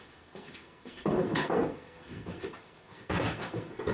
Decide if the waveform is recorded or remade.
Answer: remade